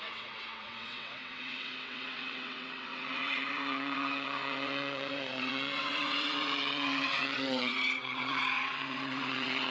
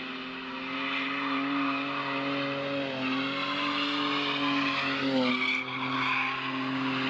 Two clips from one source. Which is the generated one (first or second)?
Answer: first